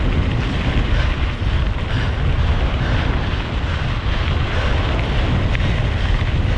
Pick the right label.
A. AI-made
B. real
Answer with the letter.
B